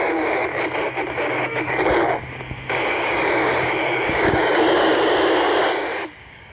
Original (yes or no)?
no